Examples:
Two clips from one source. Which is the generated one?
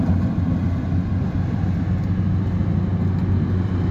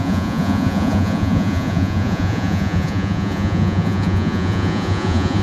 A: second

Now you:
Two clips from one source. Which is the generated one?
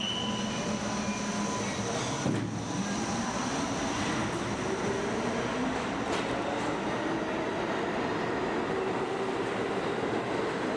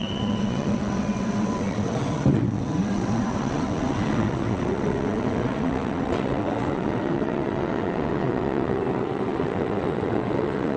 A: second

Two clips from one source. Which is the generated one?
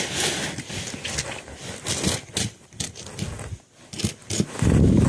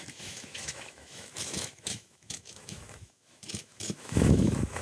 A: second